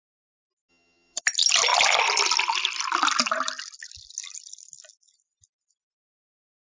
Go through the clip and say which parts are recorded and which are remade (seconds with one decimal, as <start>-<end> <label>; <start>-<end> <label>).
0.0-0.7 recorded; 0.7-1.2 remade; 1.2-6.7 recorded